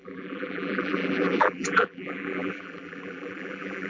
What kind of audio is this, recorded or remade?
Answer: remade